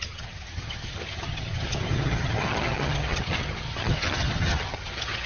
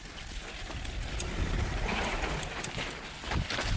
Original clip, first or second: second